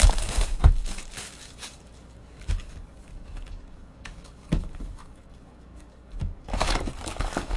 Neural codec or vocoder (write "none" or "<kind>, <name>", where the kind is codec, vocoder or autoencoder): codec, DAC